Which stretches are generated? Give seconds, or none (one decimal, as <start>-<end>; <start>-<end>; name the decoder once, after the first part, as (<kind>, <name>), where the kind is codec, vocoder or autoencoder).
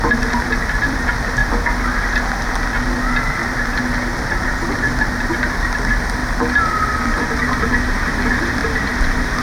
8.6-9.4 (vocoder, BigVGAN v2)